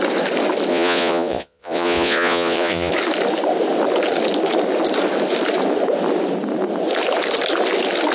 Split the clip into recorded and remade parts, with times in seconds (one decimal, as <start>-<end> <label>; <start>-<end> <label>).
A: 0.0-0.7 recorded; 0.7-2.9 remade; 2.9-8.1 recorded